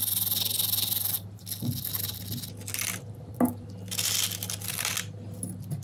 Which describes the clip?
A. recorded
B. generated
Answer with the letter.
A